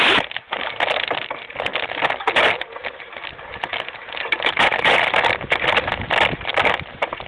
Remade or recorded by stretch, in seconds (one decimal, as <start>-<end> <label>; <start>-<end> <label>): 0.0-1.7 remade; 1.7-6.1 recorded; 6.1-7.3 remade